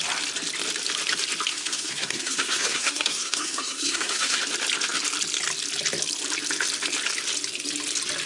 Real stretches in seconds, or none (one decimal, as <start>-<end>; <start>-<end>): 0.0-1.5; 4.4-8.3

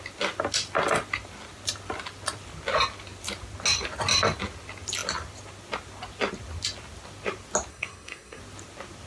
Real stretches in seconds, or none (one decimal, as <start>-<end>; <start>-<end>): 0.0-7.7; 8.4-9.1

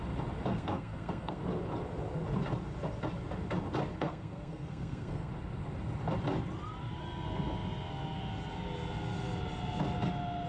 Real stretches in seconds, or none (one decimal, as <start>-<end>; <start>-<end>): 0.0-0.5; 1.4-3.9; 5.3-10.5

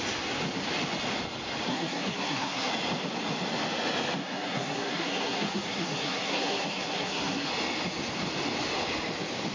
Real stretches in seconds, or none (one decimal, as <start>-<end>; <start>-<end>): 0.0-1.7; 2.7-4.2; 7.5-9.5

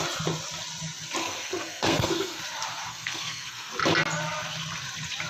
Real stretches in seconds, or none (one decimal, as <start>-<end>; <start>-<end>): 0.0-1.2; 2.4-2.9; 3.7-5.3

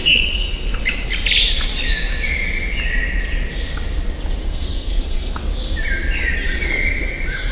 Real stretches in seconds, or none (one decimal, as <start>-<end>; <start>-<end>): 0.8-4.4; 5.4-7.5